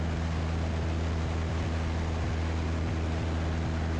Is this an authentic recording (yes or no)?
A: yes